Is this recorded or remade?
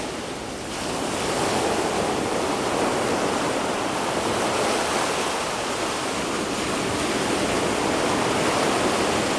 recorded